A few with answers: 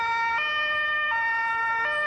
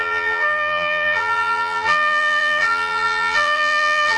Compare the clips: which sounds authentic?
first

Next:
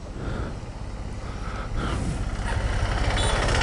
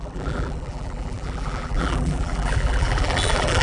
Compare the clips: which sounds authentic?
first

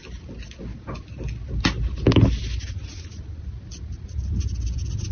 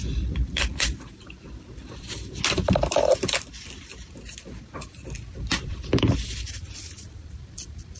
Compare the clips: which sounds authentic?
first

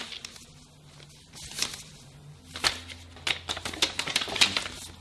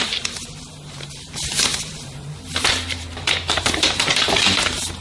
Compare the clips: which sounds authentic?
first